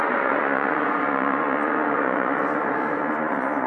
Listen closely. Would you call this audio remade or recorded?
remade